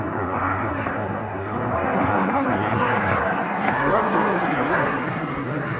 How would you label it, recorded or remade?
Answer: remade